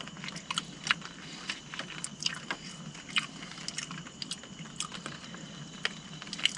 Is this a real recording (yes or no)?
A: yes